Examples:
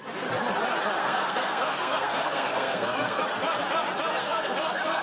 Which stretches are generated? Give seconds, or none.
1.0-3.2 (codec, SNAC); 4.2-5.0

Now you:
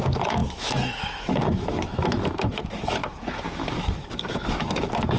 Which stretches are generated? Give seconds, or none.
0.0-5.2 (autoencoder, DAC-VAE)

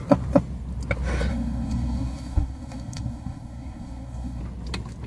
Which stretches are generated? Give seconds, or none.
1.3-4.4 (codec, SNAC)

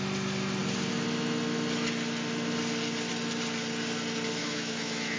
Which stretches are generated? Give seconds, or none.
4.4-5.2 (autoencoder, DAC-VAE)